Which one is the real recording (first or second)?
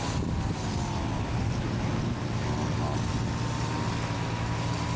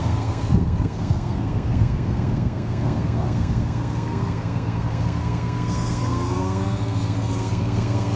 first